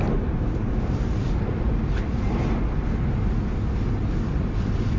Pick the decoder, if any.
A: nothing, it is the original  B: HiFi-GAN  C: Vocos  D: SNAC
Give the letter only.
A